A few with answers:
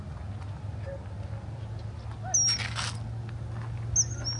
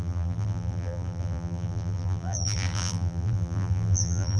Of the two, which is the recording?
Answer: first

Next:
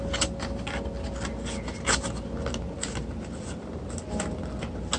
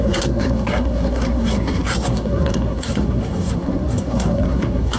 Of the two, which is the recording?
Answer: first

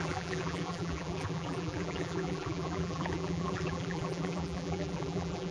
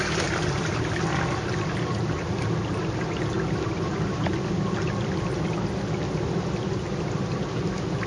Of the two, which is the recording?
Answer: second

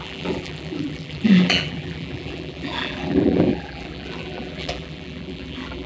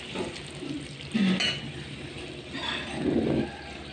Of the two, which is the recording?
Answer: second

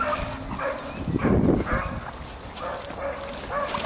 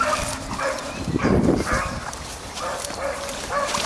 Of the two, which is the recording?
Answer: first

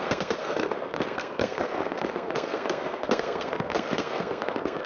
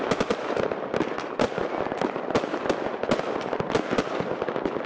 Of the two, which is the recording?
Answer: second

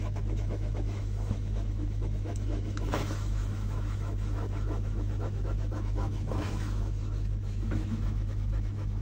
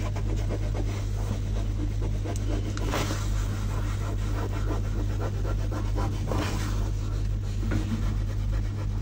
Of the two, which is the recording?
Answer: second